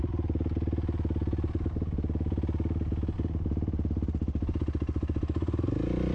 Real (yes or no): yes